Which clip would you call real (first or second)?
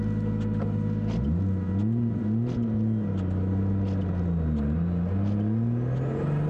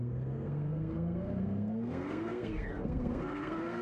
first